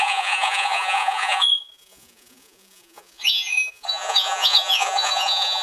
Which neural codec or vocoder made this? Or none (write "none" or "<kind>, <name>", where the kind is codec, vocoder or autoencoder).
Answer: vocoder, Vocos